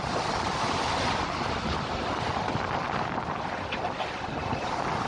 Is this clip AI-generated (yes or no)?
no